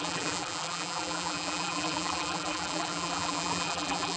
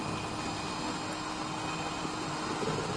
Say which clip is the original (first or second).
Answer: second